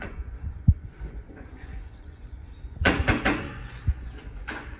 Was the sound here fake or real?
fake